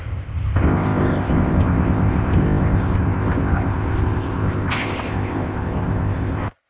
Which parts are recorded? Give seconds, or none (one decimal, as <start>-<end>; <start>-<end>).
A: none